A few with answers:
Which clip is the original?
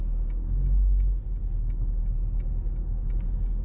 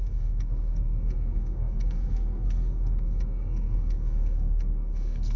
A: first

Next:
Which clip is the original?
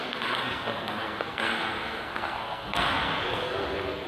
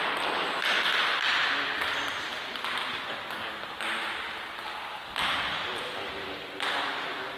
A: second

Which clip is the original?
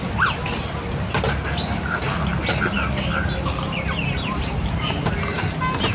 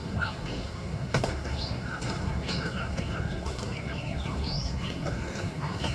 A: first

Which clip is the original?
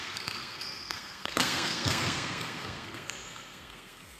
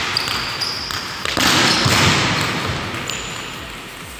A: second